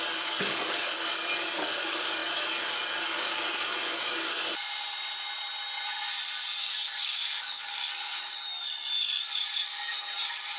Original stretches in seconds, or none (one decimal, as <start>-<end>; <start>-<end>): 4.5-6.6; 7.8-10.6

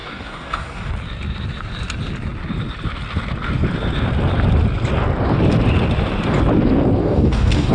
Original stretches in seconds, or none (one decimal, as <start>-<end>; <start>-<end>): 0.9-7.0

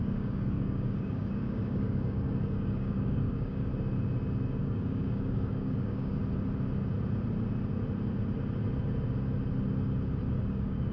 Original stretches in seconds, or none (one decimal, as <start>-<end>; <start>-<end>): 3.7-4.6; 6.2-10.5

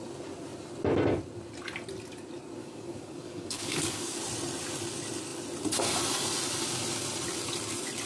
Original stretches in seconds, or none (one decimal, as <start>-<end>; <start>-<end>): 0.0-2.6; 4.2-8.1

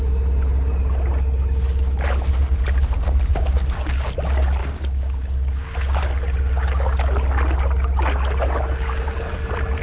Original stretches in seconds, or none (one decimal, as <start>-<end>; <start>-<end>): 0.0-3.3; 4.1-4.6; 6.0-9.8

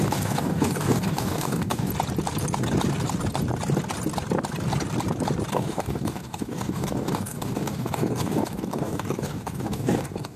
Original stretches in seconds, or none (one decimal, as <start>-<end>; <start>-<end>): 1.9-5.5

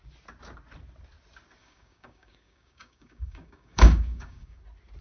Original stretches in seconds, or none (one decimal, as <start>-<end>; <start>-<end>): 0.0-1.6; 4.6-5.0